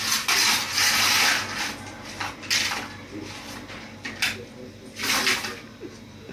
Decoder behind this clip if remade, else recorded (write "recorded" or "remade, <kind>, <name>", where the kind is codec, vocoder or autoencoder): recorded